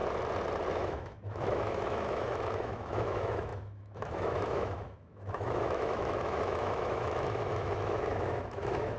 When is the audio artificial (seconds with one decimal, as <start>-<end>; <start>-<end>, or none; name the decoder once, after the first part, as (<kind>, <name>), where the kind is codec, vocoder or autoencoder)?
0.7-9.0 (autoencoder, DAC-VAE)